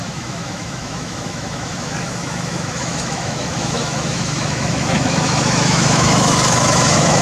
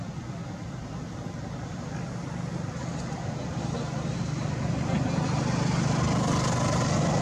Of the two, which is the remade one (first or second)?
first